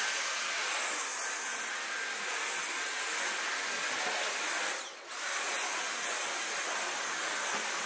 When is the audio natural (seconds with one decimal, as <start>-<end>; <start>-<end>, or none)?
0.0-7.9